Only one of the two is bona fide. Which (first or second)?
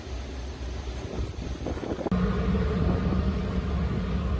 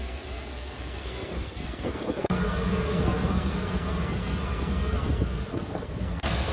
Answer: first